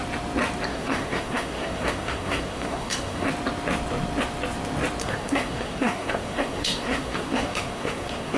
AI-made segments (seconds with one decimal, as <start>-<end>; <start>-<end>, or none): 0.7-3.3; 5.0-8.4